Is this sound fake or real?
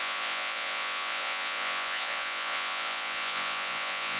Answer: fake